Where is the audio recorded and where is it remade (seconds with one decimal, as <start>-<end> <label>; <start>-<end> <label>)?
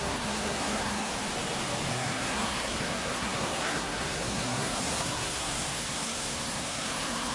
0.0-1.1 remade; 1.1-1.9 recorded; 1.9-7.3 remade